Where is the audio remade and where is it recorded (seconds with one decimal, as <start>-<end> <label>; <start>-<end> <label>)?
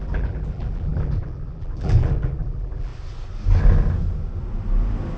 0.0-2.9 remade; 2.9-5.2 recorded